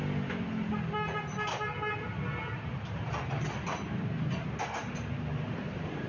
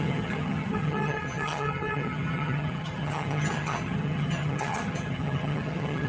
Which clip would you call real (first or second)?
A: first